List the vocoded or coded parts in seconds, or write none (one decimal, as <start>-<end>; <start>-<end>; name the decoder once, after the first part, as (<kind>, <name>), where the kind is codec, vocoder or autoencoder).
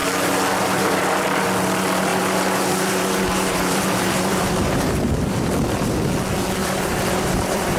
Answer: 2.1-5.3 (vocoder, BigVGAN v2); 6.6-7.8